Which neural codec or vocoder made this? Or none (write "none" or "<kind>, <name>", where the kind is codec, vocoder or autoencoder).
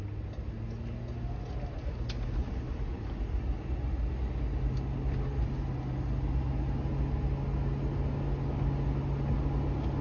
none